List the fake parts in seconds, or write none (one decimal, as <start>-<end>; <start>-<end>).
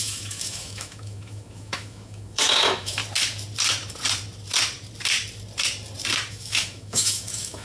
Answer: 0.0-3.0; 6.3-7.6